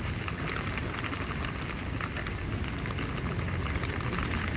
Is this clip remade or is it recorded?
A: recorded